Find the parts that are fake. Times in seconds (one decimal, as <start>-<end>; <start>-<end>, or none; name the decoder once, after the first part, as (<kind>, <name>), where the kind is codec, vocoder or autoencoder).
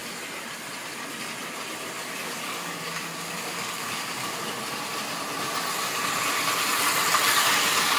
2.0-4.4 (codec, DAC); 7.4-8.0